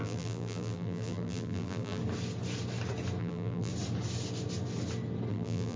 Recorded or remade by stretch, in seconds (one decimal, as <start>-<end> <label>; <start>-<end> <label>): 0.0-2.0 remade; 2.0-3.2 recorded; 3.2-3.7 remade; 3.7-5.3 recorded; 5.3-5.8 remade